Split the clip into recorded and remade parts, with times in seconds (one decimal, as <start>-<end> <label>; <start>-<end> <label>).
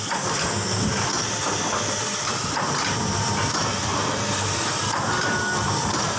0.0-6.2 recorded